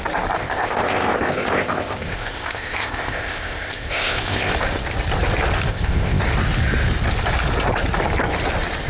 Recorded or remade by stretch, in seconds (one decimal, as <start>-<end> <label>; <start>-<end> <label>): 0.0-0.4 recorded; 0.4-4.5 remade; 4.5-5.7 recorded; 5.7-6.2 remade; 6.2-8.9 recorded